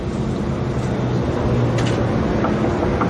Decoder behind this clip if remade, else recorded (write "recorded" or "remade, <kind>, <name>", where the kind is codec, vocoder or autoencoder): recorded